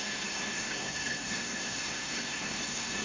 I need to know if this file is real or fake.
fake